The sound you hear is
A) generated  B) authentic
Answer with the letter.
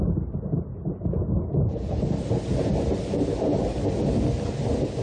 B